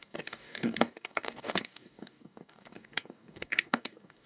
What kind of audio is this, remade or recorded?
remade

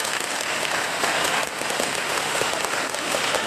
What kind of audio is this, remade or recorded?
remade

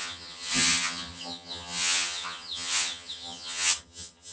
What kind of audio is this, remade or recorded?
remade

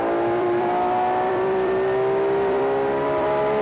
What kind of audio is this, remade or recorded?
remade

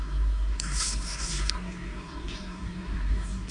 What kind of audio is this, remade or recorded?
remade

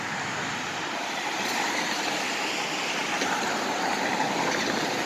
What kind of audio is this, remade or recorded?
remade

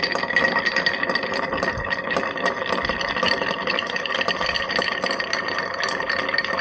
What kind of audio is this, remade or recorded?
recorded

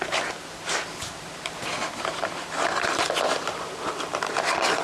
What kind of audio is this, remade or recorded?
recorded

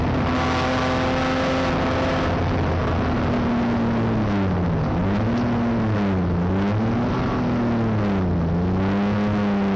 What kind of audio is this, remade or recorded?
recorded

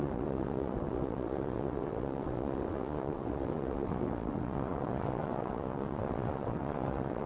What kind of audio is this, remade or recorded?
remade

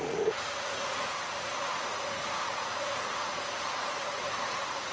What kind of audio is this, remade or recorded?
remade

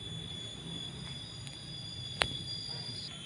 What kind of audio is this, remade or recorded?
recorded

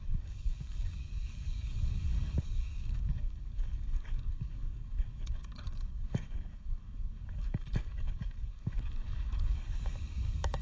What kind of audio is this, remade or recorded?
remade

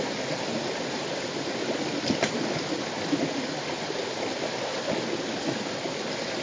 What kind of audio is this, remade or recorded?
recorded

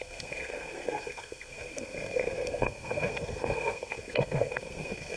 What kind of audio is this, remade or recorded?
remade